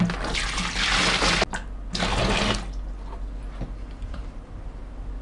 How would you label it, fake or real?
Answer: real